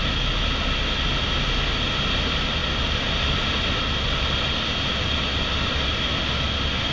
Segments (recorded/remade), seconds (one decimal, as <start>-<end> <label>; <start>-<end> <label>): 0.0-6.9 recorded